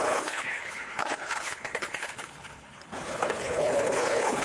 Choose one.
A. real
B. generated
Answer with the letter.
B